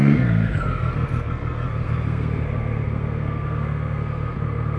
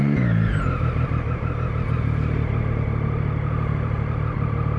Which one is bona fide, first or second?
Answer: second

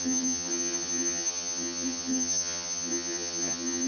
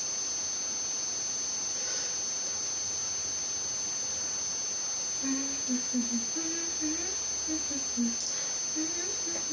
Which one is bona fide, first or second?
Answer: second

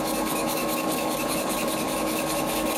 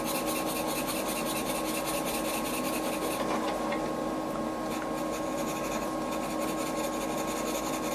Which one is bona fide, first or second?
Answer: second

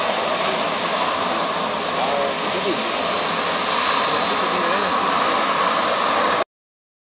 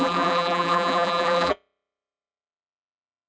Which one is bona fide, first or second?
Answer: first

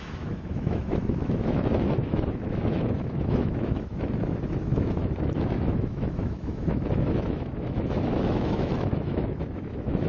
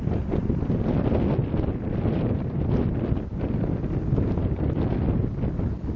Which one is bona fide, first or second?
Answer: second